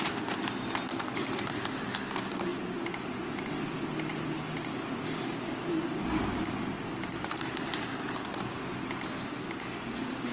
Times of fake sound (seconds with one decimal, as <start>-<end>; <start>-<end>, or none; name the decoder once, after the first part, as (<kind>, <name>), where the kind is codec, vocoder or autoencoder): none